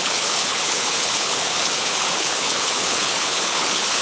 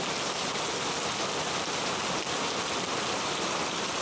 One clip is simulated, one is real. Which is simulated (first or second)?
first